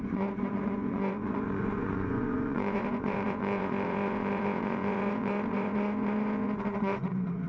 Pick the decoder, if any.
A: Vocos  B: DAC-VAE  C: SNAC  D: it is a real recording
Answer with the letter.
A